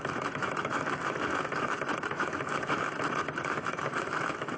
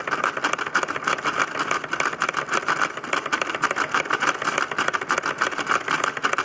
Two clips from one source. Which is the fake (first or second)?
first